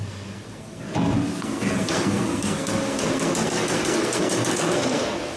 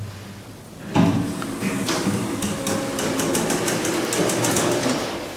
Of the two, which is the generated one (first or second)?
first